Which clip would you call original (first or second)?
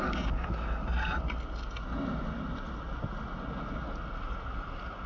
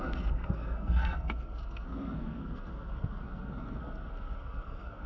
first